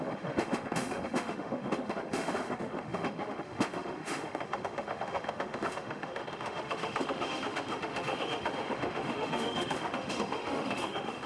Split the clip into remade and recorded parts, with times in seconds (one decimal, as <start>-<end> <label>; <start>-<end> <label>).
0.0-11.3 remade